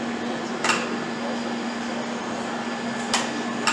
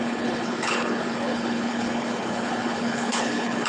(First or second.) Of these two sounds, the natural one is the first